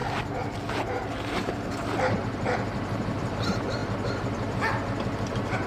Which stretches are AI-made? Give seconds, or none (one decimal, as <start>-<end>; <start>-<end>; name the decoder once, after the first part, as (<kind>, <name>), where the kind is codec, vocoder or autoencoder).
1.0-3.8 (vocoder, BigVGAN v2); 5.3-5.7